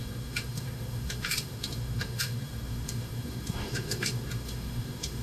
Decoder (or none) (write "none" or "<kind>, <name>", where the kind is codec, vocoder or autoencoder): autoencoder, DAC-VAE